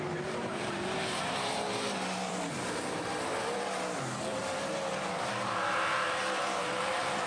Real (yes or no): no